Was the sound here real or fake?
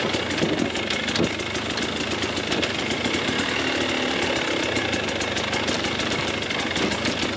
real